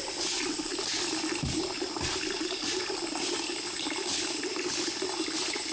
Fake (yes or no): no